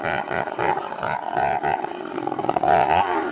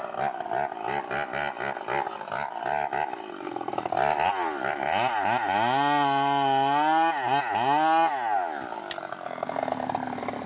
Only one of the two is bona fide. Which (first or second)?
second